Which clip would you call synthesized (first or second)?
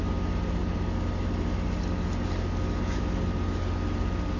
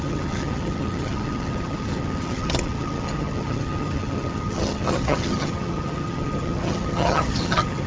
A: second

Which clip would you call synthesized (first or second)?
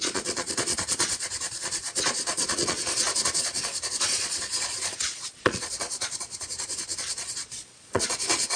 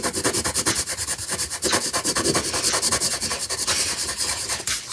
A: first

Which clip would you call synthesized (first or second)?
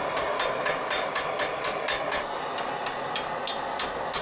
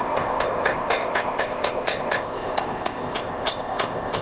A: second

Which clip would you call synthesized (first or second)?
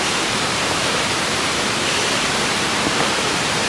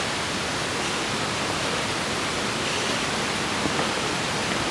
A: first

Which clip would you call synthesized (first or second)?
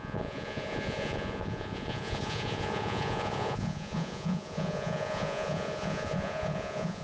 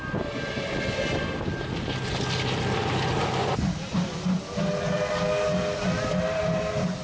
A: first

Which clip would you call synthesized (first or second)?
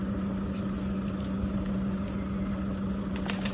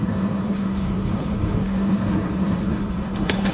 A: second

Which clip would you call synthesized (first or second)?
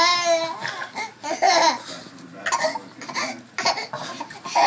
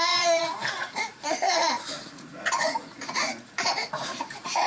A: second